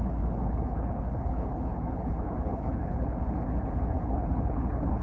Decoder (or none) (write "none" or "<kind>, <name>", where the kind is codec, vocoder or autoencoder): codec, HILCodec